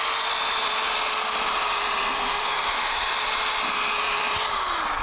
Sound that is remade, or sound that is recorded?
remade